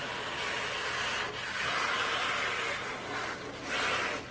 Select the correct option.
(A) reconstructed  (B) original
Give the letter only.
B